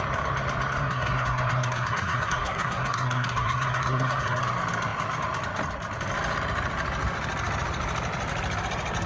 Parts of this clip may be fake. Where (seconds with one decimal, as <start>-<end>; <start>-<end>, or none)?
0.8-4.4